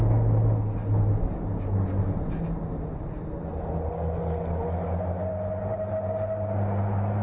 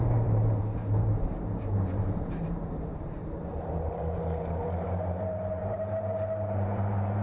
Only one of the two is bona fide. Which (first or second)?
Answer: first